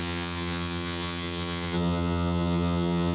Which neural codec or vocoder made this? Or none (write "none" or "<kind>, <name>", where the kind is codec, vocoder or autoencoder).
vocoder, HiFi-GAN